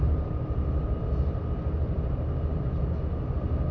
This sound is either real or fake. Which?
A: real